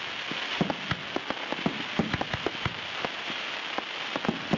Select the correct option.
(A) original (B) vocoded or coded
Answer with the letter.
A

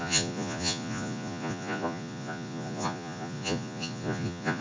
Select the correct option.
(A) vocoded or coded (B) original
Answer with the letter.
A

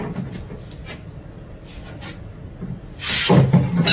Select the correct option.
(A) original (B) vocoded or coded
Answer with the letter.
A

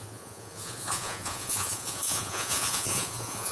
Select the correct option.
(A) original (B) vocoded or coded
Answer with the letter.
B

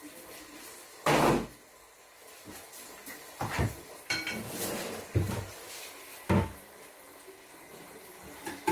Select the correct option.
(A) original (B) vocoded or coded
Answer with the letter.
A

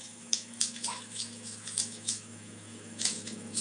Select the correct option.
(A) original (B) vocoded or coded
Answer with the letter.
B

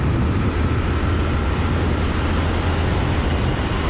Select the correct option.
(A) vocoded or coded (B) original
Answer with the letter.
B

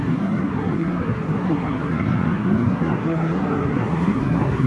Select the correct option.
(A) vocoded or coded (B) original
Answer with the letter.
A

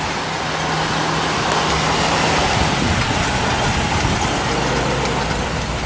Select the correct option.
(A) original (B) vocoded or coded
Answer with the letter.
A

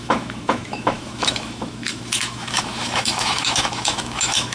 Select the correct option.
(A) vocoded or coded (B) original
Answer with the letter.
A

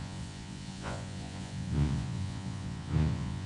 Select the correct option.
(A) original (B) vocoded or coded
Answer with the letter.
B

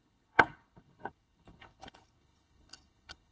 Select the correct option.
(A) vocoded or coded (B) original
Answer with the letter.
A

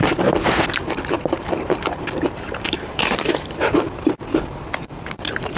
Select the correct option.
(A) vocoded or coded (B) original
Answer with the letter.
A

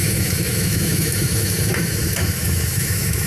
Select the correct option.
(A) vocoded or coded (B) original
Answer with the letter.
A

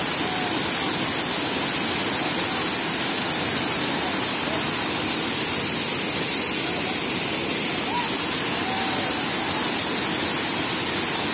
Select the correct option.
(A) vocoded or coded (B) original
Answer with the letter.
B